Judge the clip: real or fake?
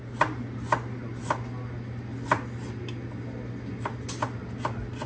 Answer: real